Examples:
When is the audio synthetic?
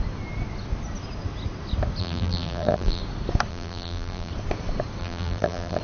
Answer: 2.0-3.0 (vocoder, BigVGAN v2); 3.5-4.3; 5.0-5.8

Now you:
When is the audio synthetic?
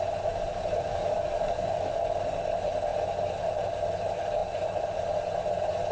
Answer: 0.9-1.9 (codec, DAC)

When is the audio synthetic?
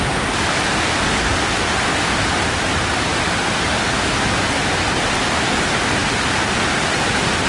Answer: none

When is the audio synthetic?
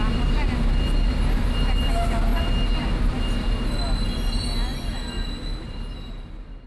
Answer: none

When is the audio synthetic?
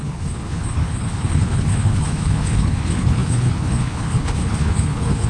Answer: 0.0-5.3 (codec, HILCodec)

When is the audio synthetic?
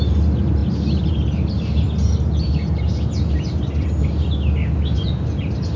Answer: none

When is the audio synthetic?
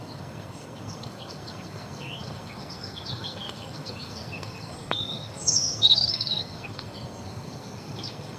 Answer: 0.0-8.4 (codec, SNAC)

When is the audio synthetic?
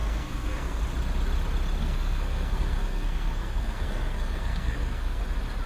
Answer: 0.0-0.8 (codec, SNAC); 1.8-5.2